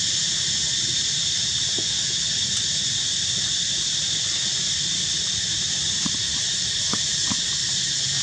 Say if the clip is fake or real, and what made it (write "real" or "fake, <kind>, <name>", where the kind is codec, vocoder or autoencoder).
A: real